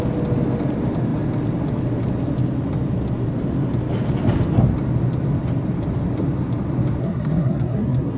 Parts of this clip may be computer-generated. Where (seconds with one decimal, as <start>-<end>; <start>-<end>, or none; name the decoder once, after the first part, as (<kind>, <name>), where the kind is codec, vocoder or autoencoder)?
7.0-8.2 (codec, SNAC)